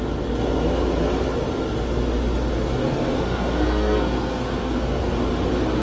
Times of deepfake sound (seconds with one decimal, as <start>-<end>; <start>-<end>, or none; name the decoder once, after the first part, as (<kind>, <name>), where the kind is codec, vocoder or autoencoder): 2.8-5.0 (codec, SNAC)